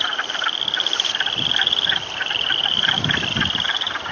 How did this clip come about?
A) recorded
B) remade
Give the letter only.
A